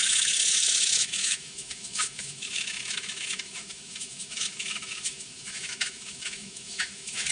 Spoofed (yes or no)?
yes